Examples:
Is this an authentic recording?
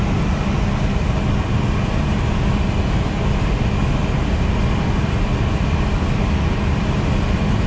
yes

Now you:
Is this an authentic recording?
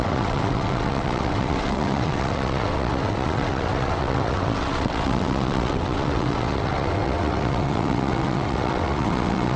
no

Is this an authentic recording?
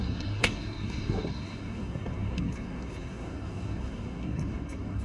no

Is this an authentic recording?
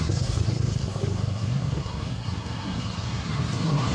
no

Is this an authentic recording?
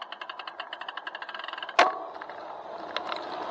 yes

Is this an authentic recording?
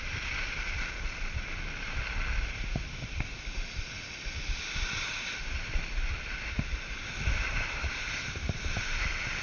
yes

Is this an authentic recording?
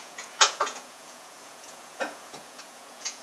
no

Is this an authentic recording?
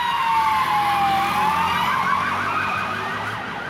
yes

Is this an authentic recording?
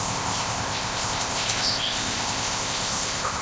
no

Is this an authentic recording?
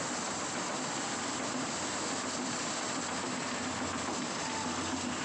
yes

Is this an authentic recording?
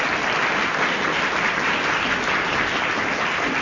yes